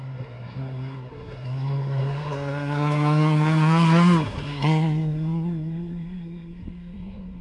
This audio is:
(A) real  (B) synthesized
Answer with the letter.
B